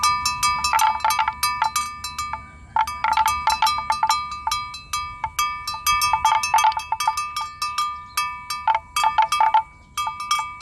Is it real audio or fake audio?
real